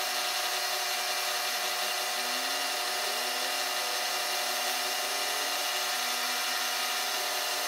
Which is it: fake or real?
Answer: real